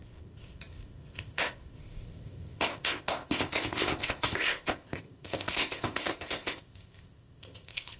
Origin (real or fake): fake